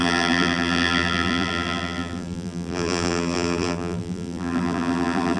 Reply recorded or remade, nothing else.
remade